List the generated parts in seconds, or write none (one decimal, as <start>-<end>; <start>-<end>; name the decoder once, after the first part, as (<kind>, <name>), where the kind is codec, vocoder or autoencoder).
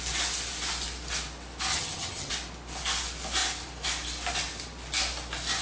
1.7-2.3 (vocoder, HiFi-GAN)